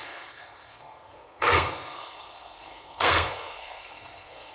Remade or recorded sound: remade